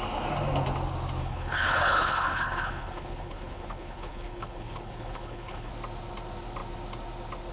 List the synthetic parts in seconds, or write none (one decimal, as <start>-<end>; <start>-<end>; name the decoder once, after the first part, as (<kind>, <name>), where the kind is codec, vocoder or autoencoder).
1.2-5.7 (codec, HILCodec)